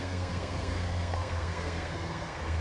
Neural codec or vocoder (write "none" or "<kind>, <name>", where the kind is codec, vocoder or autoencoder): codec, SNAC